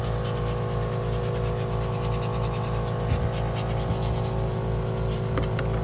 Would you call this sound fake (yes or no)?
no